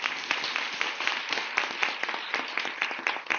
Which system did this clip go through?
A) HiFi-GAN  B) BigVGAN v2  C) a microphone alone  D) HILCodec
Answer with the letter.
C